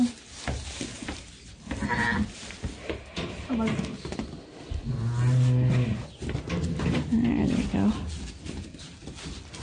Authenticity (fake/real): real